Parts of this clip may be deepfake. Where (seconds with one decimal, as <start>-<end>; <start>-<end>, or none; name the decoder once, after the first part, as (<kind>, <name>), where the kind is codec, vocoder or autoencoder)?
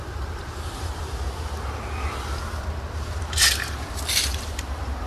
0.0-0.9 (vocoder, BigVGAN v2); 2.9-5.1